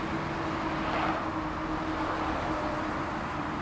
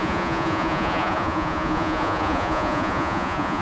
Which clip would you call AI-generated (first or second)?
second